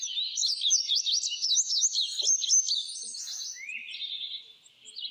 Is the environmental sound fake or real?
real